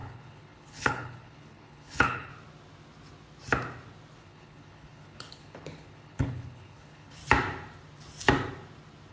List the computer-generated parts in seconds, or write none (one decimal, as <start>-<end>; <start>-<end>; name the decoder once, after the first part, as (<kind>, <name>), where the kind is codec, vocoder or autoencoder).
0.0-2.3 (codec, HILCodec); 4.2-7.2